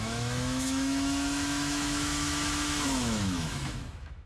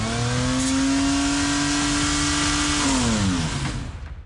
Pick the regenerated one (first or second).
first